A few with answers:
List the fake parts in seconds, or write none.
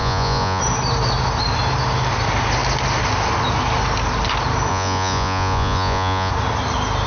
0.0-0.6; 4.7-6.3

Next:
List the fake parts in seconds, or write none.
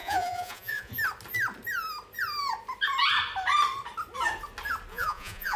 0.0-0.9; 4.9-5.6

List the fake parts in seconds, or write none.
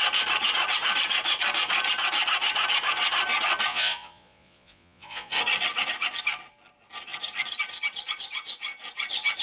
3.7-5.3